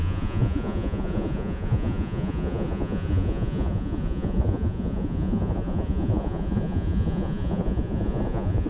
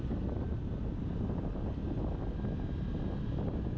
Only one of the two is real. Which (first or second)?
second